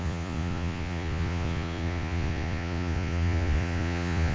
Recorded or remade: remade